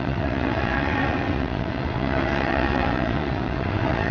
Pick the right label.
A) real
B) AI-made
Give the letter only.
B